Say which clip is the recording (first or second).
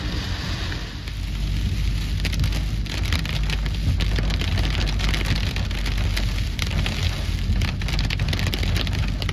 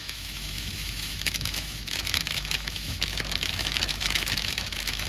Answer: first